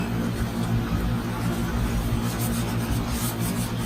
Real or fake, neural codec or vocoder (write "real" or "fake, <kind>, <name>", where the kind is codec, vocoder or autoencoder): real